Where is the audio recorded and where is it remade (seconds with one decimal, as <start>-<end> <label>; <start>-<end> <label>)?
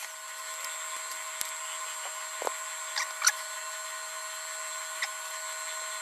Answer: 0.0-6.0 recorded